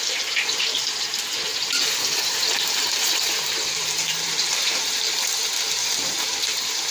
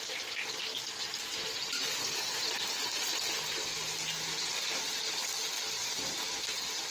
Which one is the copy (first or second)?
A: first